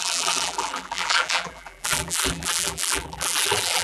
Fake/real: fake